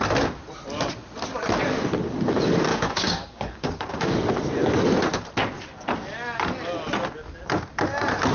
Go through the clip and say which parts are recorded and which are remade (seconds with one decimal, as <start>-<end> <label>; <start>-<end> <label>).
0.0-2.7 recorded; 2.7-4.1 remade; 4.1-8.3 recorded